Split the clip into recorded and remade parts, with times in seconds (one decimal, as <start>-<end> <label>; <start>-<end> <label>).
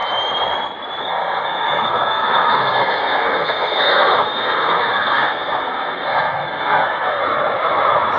0.0-1.0 recorded; 1.0-7.2 remade; 7.2-8.2 recorded